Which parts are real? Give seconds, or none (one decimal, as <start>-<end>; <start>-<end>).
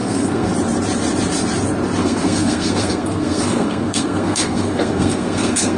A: 0.5-2.0